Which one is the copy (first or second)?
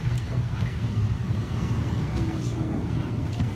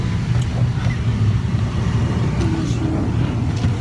first